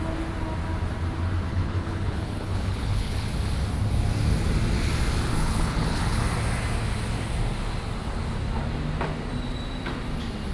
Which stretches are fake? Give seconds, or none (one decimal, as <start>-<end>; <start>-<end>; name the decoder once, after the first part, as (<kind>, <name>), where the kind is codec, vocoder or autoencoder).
1.5-3.3 (codec, HILCodec); 5.4-6.2